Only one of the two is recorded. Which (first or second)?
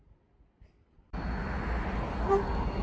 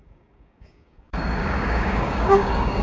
first